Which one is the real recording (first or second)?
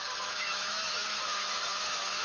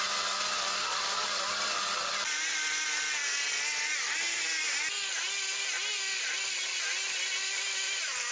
second